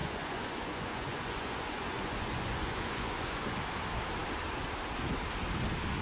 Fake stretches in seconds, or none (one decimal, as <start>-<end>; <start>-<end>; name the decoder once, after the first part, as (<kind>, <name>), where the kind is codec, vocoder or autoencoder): 0.0-3.6 (vocoder, Vocos)